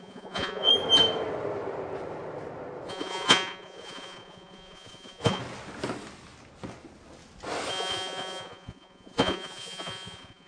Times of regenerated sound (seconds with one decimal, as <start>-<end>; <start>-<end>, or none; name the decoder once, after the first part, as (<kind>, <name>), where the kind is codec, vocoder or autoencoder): 0.0-0.7 (vocoder, Vocos); 2.9-5.4; 7.7-10.5